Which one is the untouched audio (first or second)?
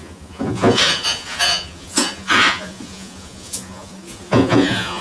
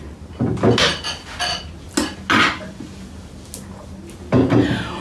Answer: second